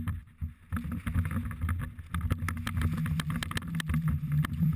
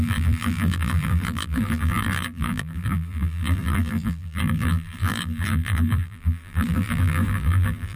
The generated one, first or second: second